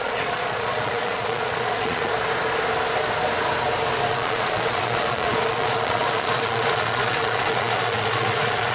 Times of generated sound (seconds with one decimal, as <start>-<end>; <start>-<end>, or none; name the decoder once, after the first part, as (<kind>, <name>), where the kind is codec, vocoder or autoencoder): 0.0-2.1 (vocoder, Vocos); 4.1-8.7